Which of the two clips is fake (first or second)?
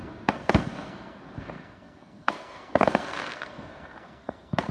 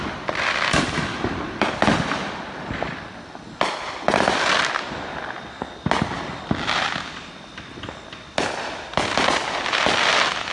first